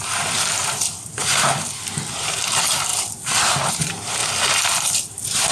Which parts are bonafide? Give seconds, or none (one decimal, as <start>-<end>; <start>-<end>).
1.5-2.2; 2.9-3.7; 4.2-5.0